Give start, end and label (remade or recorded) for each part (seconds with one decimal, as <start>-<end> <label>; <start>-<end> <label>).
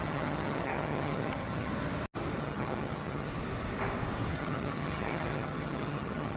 0.0-1.7 remade; 1.7-2.4 recorded; 2.4-3.3 remade; 3.3-4.3 recorded; 4.3-6.4 remade